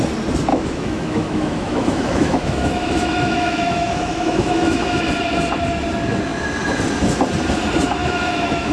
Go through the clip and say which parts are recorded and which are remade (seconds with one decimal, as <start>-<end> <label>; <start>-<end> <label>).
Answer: 0.0-0.5 recorded; 0.5-5.0 remade; 5.0-8.0 recorded; 8.0-8.7 remade